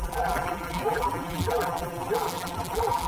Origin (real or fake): fake